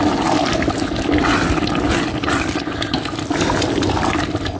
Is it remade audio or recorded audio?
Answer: recorded